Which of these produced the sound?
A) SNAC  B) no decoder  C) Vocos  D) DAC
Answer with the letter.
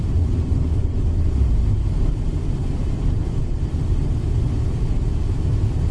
B